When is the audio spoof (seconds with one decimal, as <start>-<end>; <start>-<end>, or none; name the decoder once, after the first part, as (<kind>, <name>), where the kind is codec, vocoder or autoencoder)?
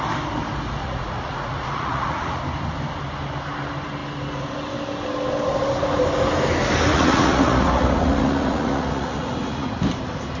0.8-2.4 (vocoder, Vocos); 6.9-9.8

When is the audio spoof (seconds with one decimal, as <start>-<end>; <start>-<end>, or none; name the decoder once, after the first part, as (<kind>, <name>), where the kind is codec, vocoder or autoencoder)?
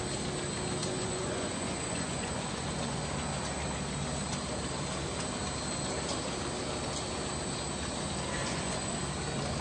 0.8-3.0 (vocoder, Vocos); 8.4-8.9